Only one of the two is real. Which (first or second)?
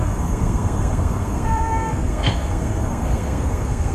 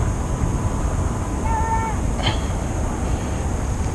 second